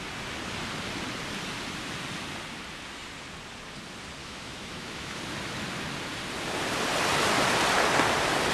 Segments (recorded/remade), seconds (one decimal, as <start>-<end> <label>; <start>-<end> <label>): 0.0-4.2 recorded; 4.2-5.2 remade; 5.2-8.5 recorded